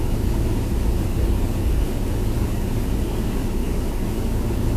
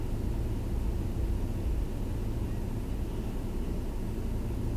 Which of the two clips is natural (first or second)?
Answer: second